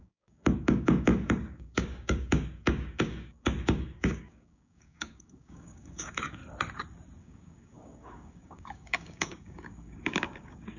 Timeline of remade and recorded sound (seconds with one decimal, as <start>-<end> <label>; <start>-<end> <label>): 0.0-6.4 remade; 6.4-7.2 recorded; 7.2-10.8 remade